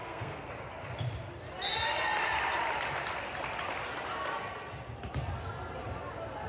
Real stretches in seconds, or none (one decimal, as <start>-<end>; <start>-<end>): 0.5-6.5